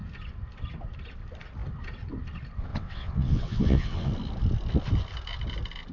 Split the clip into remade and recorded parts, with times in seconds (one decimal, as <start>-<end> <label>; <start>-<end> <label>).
0.0-2.7 recorded; 2.7-4.1 remade; 4.1-5.9 recorded